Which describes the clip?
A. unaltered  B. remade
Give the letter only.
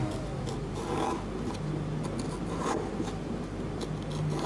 A